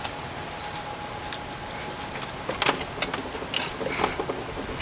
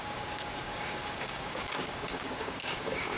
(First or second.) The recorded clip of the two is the first